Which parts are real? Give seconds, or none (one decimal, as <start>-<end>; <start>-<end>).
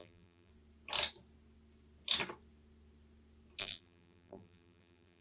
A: 0.5-3.6